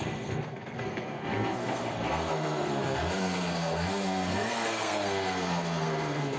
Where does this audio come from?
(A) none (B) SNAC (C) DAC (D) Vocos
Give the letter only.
B